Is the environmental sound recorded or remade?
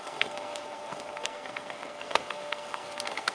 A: remade